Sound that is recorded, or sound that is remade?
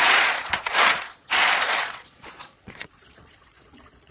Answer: remade